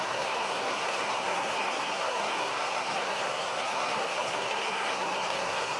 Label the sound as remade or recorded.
remade